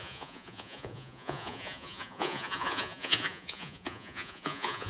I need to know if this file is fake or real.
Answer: fake